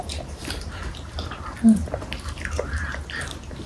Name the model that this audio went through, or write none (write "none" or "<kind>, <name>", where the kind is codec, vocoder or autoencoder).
vocoder, BigVGAN v2